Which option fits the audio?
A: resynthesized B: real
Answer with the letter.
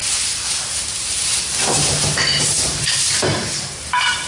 A